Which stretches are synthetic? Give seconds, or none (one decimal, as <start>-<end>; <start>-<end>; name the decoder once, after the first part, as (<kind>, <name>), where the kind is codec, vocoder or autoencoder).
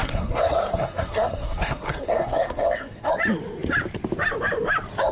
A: 0.0-3.1 (codec, SNAC)